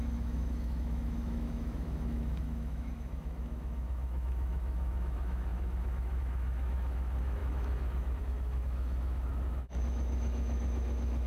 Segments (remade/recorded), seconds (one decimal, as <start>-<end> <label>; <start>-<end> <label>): 0.0-11.3 remade